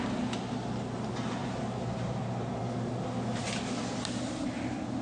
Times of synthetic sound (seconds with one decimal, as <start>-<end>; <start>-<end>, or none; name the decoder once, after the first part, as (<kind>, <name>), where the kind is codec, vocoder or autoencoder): none